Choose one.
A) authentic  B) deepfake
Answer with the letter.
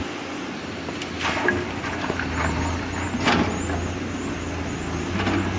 A